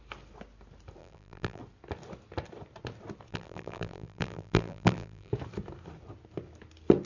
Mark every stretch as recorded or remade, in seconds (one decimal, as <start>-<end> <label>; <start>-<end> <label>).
0.0-1.0 recorded; 1.0-1.6 remade; 1.6-3.3 recorded; 3.3-5.3 remade; 5.3-7.1 recorded